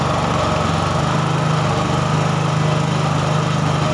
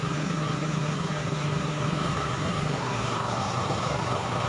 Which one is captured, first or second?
first